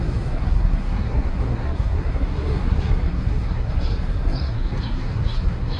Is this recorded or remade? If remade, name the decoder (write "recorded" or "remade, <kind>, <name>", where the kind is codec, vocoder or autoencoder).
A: remade, codec, SNAC